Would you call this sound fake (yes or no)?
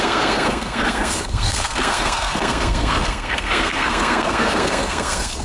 yes